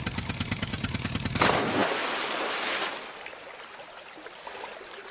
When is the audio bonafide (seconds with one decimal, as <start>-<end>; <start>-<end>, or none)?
0.0-5.1

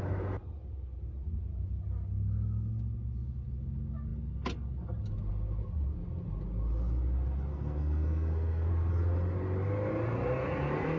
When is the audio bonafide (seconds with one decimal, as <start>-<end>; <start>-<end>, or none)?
0.0-7.5; 8.7-11.0